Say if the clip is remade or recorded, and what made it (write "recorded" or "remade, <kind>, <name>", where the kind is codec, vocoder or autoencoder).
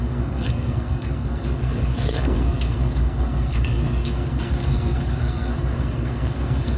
remade, codec, SNAC